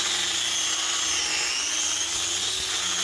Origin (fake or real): real